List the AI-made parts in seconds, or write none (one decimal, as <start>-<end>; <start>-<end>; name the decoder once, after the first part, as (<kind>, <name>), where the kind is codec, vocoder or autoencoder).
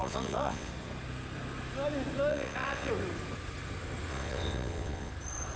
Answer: 0.0-0.7 (vocoder, WaveNeXt); 2.3-2.9; 4.1-5.1